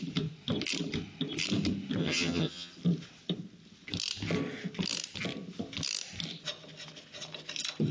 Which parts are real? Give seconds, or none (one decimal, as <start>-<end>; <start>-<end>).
0.0-2.0; 2.7-7.9